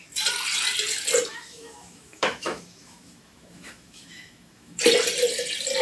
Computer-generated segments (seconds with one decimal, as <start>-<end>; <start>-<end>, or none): 1.3-4.8